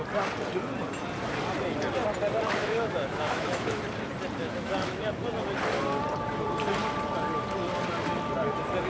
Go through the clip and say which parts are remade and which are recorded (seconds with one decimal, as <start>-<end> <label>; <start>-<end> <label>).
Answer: 0.0-2.6 recorded; 2.6-3.8 remade; 3.8-4.4 recorded; 4.4-5.2 remade; 5.2-8.9 recorded